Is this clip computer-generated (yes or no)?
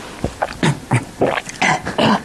no